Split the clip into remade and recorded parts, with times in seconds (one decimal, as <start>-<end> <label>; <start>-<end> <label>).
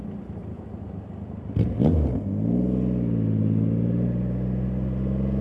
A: 0.0-5.4 recorded